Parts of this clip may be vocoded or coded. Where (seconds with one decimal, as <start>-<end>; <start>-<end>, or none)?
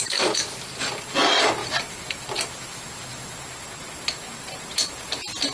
none